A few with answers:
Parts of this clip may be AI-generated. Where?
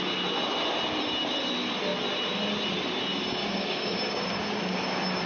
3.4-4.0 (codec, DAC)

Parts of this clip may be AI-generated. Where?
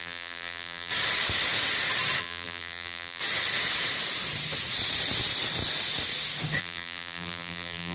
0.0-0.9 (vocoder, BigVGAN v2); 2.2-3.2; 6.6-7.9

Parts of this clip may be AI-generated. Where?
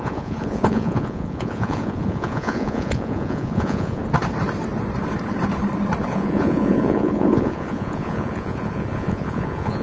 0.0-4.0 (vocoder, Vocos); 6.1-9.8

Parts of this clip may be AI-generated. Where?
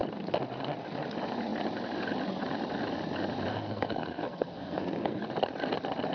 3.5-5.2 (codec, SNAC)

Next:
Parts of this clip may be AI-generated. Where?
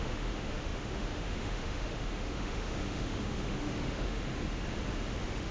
0.0-4.3 (autoencoder, DAC-VAE); 5.1-5.5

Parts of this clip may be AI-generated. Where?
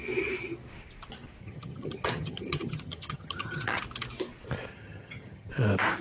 1.4-3.8 (vocoder, HiFi-GAN); 4.7-5.5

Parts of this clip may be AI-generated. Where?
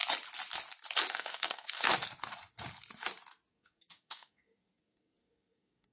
1.1-1.9 (codec, SNAC); 3.5-5.9